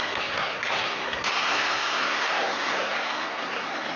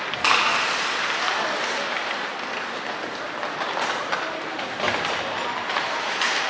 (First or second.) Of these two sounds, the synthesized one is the first